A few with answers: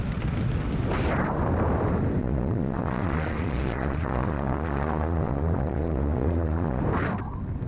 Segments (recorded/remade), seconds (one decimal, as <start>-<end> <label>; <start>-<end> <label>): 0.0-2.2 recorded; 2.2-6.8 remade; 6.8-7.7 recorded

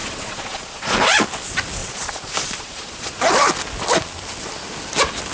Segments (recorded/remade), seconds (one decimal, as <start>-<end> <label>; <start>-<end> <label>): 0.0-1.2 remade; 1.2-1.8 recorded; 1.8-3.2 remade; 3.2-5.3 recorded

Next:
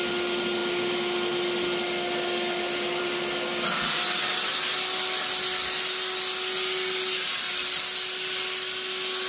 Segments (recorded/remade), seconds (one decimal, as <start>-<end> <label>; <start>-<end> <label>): 0.0-9.3 recorded

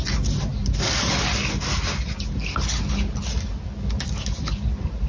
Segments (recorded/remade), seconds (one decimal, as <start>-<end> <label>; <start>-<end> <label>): 0.0-5.1 recorded

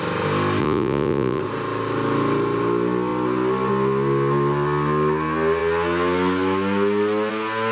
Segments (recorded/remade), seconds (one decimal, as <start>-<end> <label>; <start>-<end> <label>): 0.0-0.6 recorded; 0.6-1.4 remade; 1.4-7.7 recorded

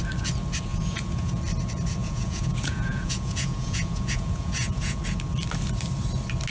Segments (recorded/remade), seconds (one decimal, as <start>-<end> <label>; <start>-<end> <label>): 0.0-0.7 recorded; 0.7-1.4 remade; 1.4-2.0 recorded; 2.0-5.0 remade; 5.0-6.5 recorded

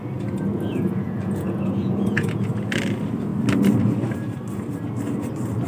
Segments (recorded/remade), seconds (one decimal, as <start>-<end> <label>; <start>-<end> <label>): 0.0-0.7 recorded; 0.7-2.5 remade; 2.5-5.7 recorded

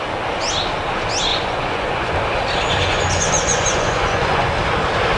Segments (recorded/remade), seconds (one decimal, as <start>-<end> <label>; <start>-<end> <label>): 0.0-1.3 recorded; 1.3-2.1 remade; 2.1-2.8 recorded; 2.8-4.5 remade; 4.5-5.2 recorded